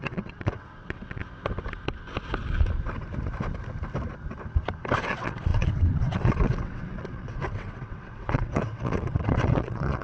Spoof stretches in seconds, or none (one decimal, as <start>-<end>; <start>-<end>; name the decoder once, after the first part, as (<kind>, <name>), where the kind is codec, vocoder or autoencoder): 0.0-1.2 (vocoder, WaveNeXt); 5.1-10.0